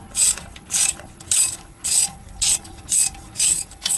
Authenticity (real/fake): fake